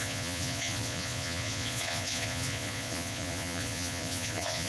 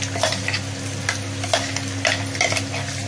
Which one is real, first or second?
second